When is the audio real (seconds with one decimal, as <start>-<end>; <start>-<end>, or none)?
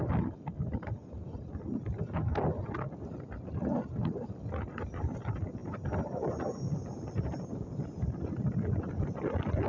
0.0-5.6; 8.3-9.7